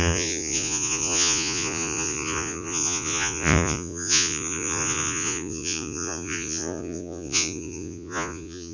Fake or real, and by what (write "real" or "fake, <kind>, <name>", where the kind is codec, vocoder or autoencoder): fake, vocoder, Vocos